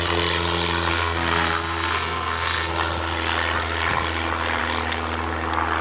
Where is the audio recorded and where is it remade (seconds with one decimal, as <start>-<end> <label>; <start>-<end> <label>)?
0.0-0.9 recorded; 0.9-2.7 remade; 2.7-5.8 recorded